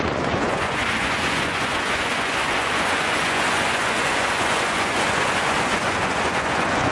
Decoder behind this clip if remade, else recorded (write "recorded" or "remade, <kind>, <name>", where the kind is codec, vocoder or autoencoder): remade, vocoder, Vocos